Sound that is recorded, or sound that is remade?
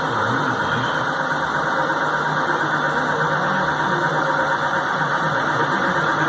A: recorded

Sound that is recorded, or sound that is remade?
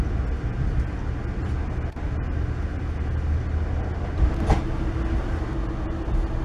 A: recorded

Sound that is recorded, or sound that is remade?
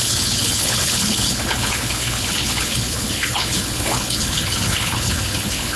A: remade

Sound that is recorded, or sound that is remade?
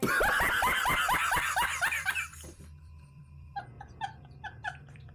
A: remade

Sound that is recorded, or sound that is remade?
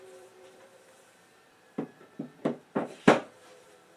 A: remade